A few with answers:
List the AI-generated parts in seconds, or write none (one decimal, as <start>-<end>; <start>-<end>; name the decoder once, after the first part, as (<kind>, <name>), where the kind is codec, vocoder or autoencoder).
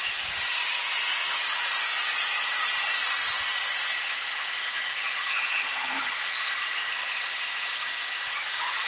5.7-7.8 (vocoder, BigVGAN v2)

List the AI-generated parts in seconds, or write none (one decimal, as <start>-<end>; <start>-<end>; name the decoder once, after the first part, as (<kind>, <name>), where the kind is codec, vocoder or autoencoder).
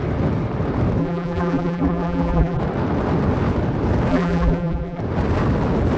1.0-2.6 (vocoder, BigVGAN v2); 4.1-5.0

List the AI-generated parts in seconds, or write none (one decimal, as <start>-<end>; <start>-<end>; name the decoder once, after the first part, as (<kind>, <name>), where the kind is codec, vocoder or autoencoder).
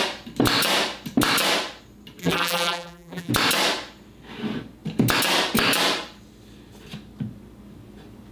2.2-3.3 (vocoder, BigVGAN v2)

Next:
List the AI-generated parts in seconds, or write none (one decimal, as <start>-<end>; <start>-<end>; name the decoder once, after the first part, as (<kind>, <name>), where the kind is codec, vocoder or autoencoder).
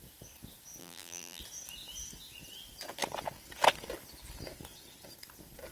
0.8-1.4 (vocoder, BigVGAN v2)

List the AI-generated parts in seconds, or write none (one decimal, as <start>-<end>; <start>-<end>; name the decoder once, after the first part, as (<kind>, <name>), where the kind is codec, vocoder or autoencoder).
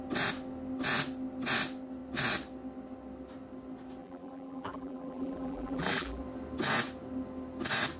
4.0-6.2 (vocoder, BigVGAN v2)